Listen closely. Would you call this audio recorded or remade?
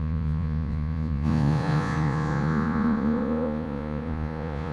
remade